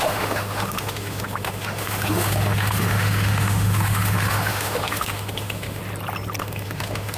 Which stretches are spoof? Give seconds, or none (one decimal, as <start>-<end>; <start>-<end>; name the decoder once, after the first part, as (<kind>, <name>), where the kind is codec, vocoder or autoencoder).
0.0-5.8 (autoencoder, DAC-VAE); 6.4-7.2